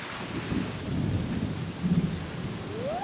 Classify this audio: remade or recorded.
recorded